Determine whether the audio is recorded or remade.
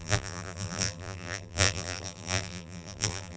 remade